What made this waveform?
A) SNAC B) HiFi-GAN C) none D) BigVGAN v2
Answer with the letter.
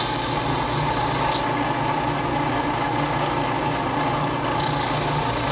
C